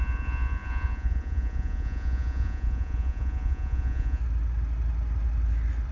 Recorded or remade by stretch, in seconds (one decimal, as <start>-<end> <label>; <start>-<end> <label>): 0.0-4.2 remade; 4.2-5.9 recorded